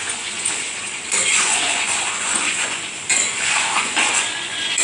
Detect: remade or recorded remade